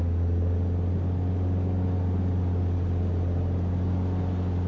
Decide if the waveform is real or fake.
real